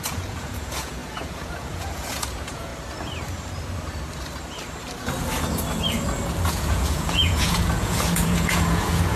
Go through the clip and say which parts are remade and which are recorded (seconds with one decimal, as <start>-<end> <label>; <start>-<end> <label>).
0.0-2.7 remade; 2.7-6.5 recorded; 6.5-9.2 remade